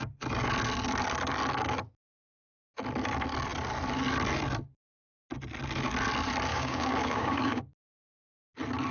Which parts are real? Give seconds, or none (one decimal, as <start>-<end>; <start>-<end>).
0.0-6.5; 7.6-8.9